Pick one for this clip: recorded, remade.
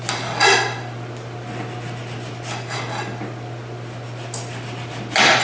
recorded